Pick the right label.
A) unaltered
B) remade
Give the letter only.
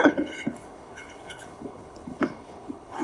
B